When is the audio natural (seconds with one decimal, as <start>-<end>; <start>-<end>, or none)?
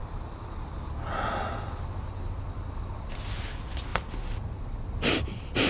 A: 0.0-3.9